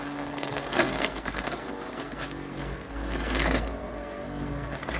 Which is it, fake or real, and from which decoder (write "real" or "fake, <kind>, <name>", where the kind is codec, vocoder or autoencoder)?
fake, codec, SNAC